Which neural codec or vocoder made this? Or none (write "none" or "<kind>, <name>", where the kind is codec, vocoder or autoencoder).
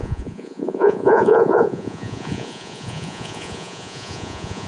vocoder, Vocos